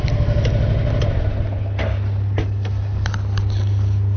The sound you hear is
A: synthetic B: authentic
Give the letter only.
B